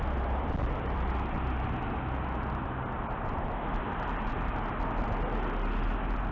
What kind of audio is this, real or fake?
real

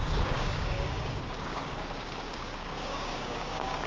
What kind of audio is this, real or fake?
fake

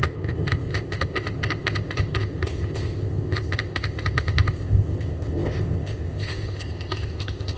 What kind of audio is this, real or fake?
fake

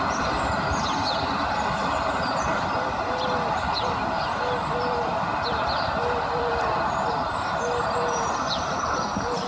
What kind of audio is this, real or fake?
fake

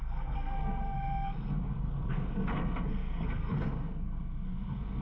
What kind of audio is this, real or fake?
fake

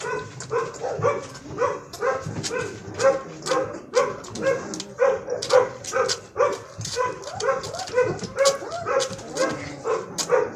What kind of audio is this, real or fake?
real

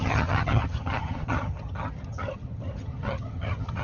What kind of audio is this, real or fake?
fake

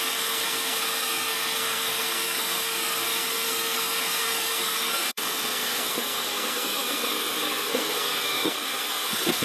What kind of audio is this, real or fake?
fake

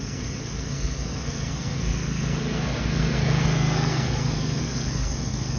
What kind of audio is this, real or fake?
fake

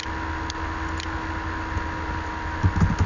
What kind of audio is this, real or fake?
real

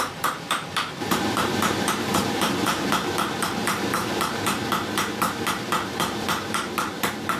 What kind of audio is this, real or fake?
fake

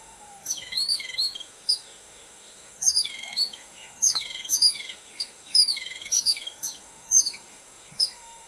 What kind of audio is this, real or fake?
fake